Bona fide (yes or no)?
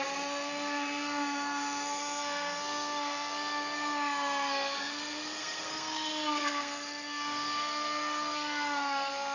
no